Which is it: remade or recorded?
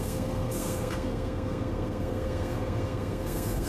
remade